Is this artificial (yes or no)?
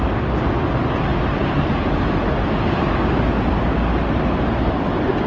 no